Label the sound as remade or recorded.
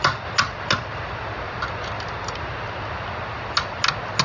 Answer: recorded